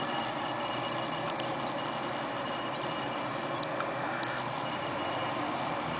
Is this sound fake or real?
real